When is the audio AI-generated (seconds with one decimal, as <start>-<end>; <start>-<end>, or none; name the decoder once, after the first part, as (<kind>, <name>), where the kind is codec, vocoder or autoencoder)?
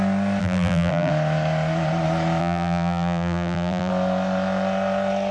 0.4-1.1 (vocoder, BigVGAN v2); 2.4-3.9